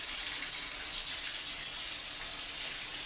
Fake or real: real